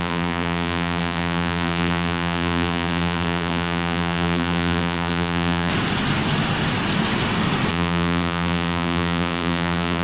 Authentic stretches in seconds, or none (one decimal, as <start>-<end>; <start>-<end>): 5.7-7.7